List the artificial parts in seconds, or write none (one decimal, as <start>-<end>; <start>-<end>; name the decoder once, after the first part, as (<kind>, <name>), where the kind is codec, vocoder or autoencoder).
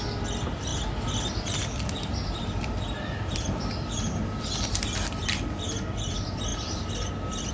none